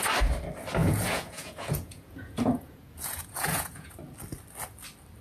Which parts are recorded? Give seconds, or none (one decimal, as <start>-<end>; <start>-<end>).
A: 0.0-0.8; 3.9-5.2